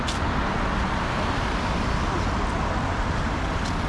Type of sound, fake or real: real